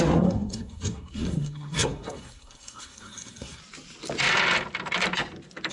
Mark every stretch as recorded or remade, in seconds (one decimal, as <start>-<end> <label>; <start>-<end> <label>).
0.0-3.6 remade; 3.6-5.7 recorded